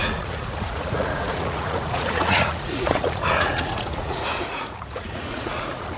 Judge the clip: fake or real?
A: fake